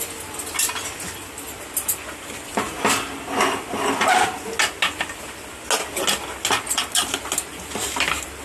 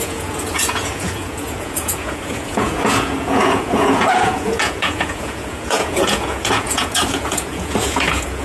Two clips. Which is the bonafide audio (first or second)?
first